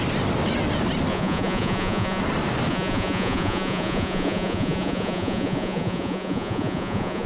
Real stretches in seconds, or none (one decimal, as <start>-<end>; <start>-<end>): 0.0-1.1; 2.2-2.7